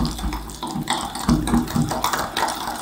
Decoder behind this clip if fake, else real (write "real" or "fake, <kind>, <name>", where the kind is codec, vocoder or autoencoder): real